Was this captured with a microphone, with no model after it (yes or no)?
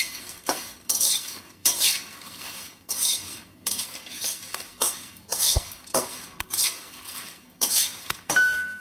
no